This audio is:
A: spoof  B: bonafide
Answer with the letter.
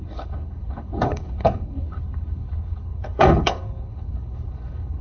A